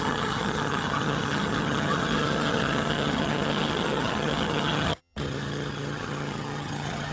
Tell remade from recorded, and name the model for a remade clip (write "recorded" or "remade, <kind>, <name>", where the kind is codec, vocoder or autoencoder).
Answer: remade, vocoder, HiFi-GAN